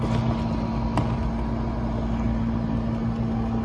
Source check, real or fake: real